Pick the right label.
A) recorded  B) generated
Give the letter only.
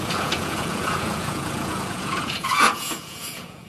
B